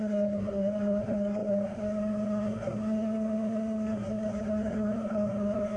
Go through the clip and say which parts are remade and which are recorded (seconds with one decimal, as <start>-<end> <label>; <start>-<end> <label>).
0.0-5.8 remade